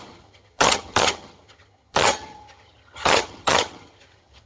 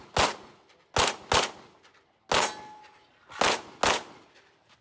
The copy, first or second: first